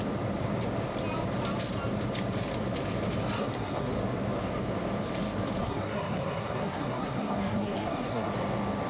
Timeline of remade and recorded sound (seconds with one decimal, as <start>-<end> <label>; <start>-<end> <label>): 0.0-3.4 recorded; 3.4-3.9 remade; 3.9-5.6 recorded; 5.6-8.3 remade; 8.3-8.9 recorded